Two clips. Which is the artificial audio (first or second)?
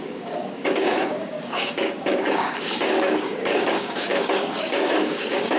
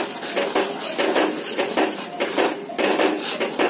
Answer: first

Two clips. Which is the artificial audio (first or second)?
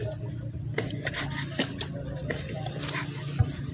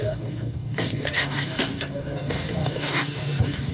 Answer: second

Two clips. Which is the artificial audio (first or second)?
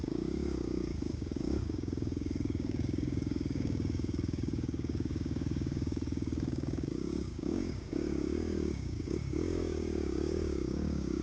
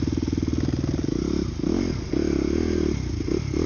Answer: first